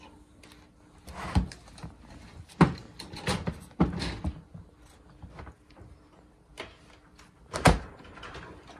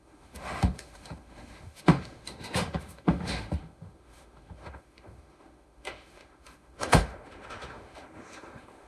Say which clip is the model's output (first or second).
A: second